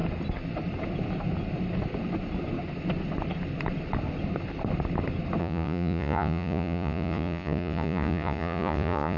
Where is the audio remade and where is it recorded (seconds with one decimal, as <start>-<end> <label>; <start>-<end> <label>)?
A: 0.0-5.4 recorded; 5.4-9.2 remade